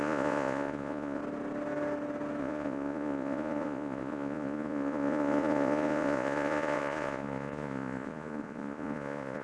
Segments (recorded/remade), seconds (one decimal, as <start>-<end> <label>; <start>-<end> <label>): 0.0-1.2 remade; 1.2-2.4 recorded; 2.4-9.4 remade